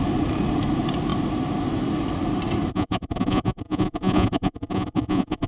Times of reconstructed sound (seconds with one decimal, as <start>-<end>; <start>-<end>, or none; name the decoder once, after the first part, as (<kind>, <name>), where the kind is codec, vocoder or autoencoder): 2.7-5.5 (vocoder, Vocos)